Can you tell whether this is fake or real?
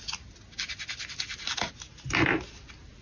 real